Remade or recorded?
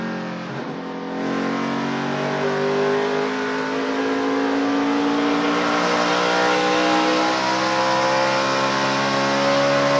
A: recorded